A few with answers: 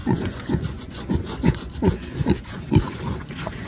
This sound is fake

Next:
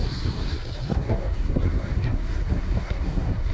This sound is fake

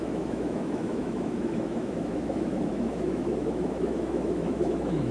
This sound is fake